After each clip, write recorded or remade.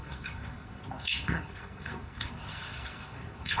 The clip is remade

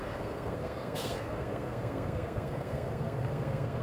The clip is remade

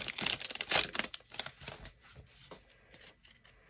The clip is recorded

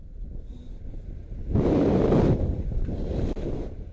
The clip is recorded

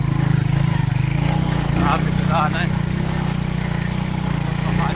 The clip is recorded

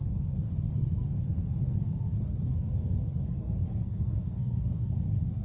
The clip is remade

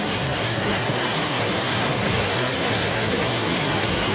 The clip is remade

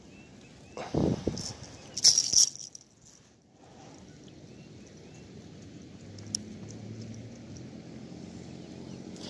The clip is recorded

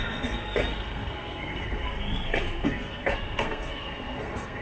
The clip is remade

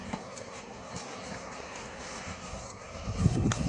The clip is remade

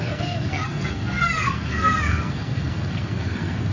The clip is remade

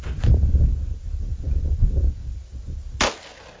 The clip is recorded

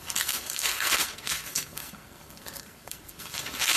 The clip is remade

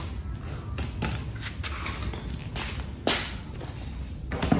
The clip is recorded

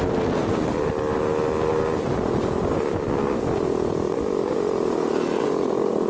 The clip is recorded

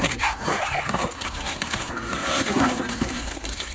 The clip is remade